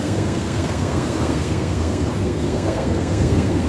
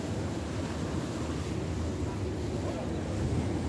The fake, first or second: first